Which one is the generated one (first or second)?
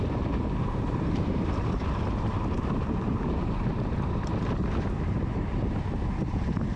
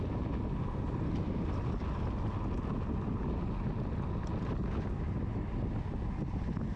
first